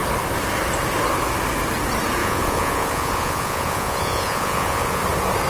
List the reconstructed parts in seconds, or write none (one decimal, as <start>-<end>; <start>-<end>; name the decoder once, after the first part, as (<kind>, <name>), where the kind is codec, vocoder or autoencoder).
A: 2.2-5.0 (vocoder, Vocos)